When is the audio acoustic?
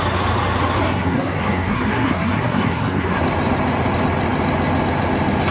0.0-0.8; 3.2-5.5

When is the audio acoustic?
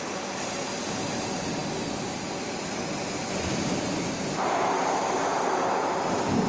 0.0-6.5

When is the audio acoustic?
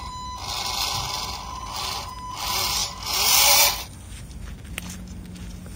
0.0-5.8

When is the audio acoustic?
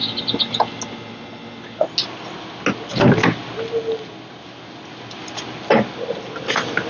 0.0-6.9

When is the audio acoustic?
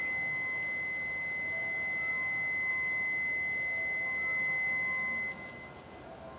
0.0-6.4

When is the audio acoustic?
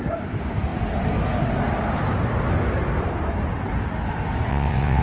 0.0-4.5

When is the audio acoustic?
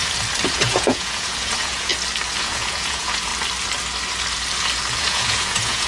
0.0-0.5; 1.9-2.4; 3.3-4.9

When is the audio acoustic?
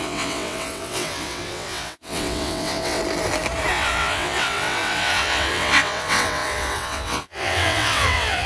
3.0-3.7